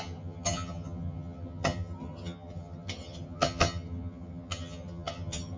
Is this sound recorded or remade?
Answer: remade